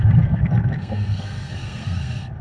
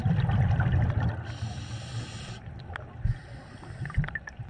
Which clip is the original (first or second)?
second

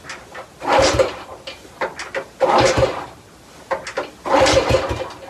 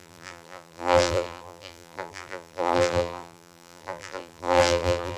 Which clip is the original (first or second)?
first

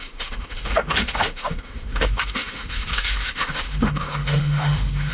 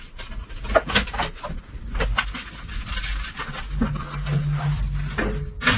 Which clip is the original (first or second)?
second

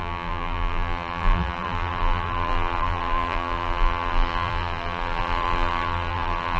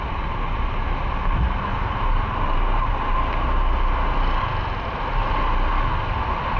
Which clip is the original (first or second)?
second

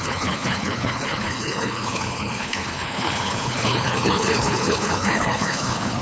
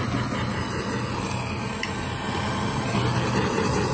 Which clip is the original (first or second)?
second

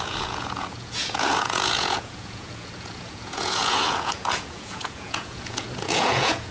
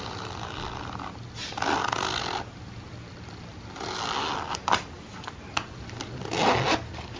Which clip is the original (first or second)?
second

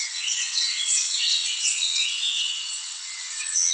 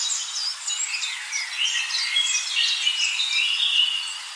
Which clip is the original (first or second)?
second